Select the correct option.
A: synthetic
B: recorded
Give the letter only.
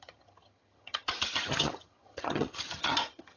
A